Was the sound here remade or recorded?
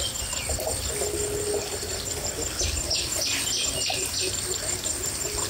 recorded